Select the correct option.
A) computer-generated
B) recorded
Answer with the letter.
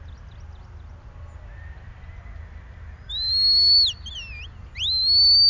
B